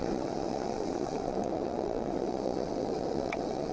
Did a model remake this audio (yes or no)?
yes